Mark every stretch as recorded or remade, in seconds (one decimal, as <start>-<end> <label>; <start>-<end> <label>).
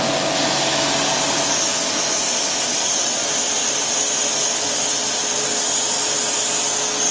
0.0-7.1 recorded